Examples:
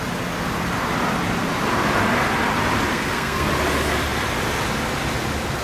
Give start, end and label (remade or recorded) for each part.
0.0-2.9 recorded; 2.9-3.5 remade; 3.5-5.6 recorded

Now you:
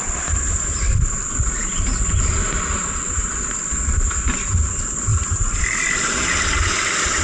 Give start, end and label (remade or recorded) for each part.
0.0-7.2 recorded

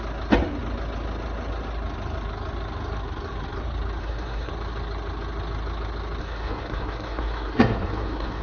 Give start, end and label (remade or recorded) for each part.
0.0-4.0 recorded; 4.0-4.5 remade; 4.5-6.2 recorded; 6.2-8.4 remade

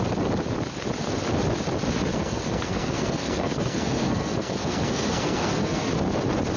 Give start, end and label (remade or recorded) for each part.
0.0-2.1 recorded; 2.1-5.9 remade; 5.9-6.6 recorded